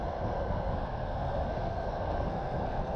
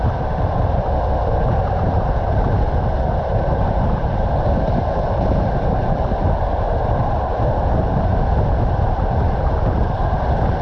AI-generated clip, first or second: first